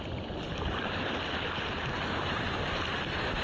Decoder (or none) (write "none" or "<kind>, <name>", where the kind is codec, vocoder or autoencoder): none